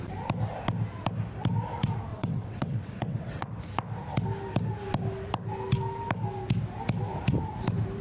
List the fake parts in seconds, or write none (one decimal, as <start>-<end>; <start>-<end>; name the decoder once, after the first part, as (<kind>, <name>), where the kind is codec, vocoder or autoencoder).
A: 2.1-3.5 (vocoder, WaveNeXt)